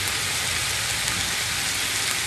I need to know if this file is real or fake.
real